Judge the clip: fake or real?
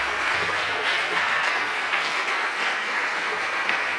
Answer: fake